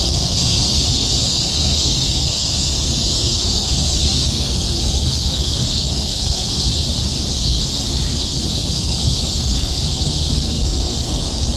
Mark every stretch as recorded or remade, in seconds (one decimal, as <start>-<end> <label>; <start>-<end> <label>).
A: 0.0-6.7 remade; 6.7-7.3 recorded; 7.3-11.6 remade